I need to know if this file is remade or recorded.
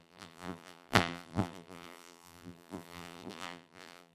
remade